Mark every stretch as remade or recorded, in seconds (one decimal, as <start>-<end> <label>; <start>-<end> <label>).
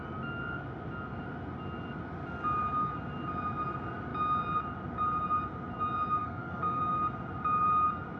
0.0-6.2 recorded; 6.2-6.8 remade; 6.8-8.2 recorded